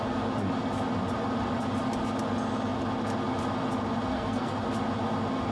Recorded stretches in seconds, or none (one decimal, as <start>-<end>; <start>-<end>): 0.0-4.1; 4.6-5.5